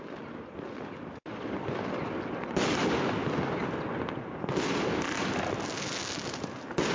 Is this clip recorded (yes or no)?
yes